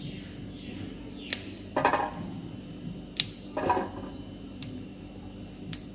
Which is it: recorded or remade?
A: recorded